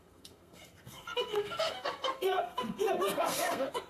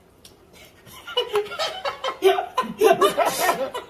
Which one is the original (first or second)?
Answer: second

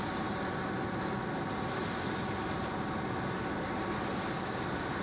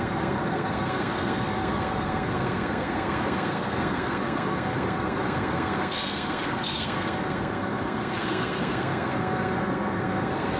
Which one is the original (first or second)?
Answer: first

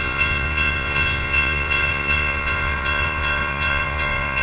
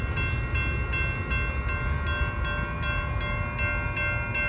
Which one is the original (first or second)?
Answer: second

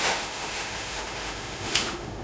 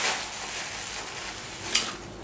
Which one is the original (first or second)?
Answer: second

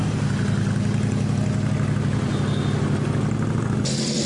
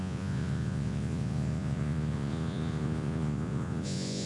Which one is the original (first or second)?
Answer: first